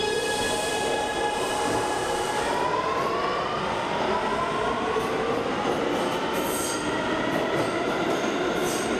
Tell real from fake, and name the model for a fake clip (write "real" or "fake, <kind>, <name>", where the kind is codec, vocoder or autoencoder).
real